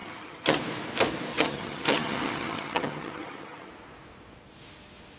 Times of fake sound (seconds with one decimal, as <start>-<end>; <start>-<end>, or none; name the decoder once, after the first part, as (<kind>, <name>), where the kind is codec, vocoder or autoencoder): 0.0-0.6 (vocoder, HiFi-GAN); 1.3-3.7